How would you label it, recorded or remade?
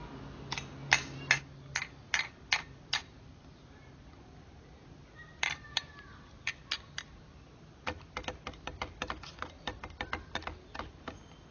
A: recorded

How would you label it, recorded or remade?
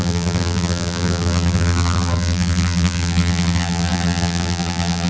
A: remade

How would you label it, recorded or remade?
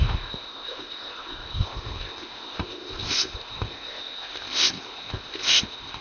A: remade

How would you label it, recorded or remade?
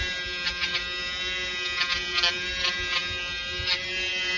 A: recorded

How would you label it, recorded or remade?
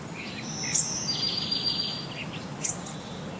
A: recorded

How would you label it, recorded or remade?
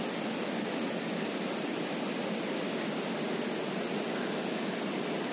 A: recorded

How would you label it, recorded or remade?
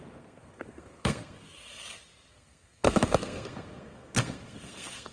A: remade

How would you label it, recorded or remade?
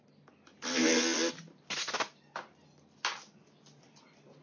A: recorded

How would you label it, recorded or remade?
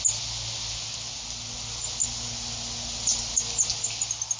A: recorded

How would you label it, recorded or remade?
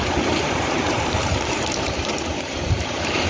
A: remade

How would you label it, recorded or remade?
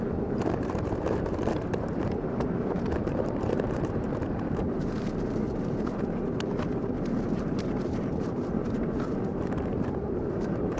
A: remade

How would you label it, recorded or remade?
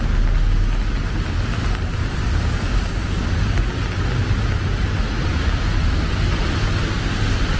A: recorded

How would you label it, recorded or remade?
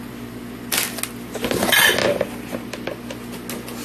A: recorded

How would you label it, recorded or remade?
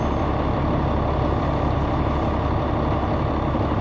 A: recorded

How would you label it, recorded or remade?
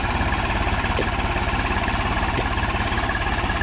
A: recorded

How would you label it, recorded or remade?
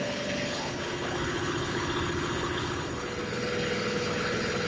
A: remade